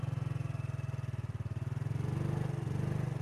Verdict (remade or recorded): recorded